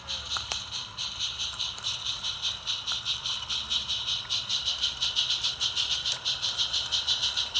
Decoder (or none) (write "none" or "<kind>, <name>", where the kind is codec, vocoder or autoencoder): none